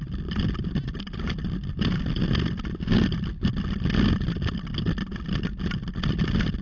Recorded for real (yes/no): yes